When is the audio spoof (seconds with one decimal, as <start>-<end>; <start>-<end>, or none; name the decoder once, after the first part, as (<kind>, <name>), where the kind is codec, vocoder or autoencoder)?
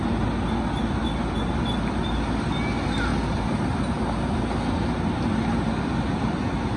3.1-4.4 (vocoder, BigVGAN v2)